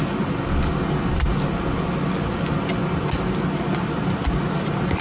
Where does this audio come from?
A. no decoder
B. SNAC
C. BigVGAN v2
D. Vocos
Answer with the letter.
A